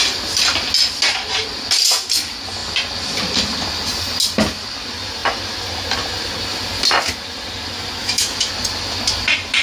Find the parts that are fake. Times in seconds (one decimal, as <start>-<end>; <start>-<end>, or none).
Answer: 8.0-8.5